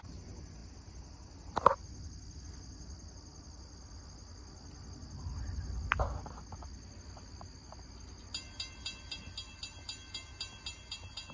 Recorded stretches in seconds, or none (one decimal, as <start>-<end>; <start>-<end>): 0.0-11.3